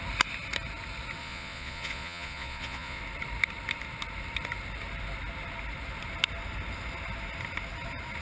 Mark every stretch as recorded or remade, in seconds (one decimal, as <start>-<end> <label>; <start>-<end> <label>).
0.0-1.2 recorded; 1.2-3.0 remade; 3.0-8.2 recorded